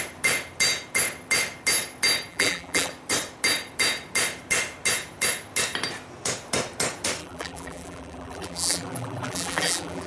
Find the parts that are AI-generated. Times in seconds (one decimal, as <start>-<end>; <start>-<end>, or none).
2.3-2.9; 7.2-10.1